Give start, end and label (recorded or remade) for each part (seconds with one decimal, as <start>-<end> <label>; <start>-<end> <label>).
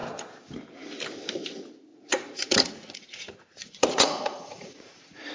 0.0-1.9 recorded; 1.9-5.3 remade